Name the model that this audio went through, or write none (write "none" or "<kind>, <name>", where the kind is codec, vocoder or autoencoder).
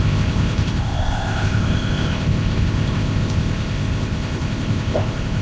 codec, ZipCodec